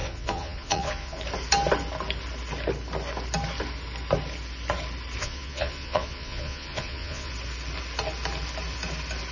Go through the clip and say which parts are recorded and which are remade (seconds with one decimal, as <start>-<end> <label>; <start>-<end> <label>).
0.0-1.2 remade; 1.2-5.2 recorded; 5.2-7.3 remade; 7.3-9.3 recorded